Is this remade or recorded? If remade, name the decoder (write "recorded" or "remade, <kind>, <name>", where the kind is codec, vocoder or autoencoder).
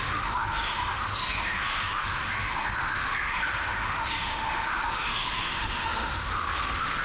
remade, autoencoder, DAC-VAE